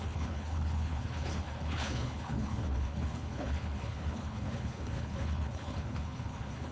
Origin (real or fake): fake